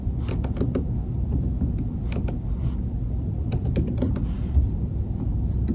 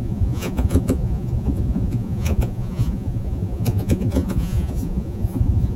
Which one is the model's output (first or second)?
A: second